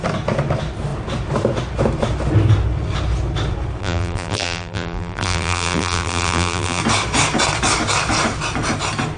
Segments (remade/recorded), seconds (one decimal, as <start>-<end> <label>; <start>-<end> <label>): 0.0-3.8 recorded; 3.8-6.8 remade; 6.8-9.2 recorded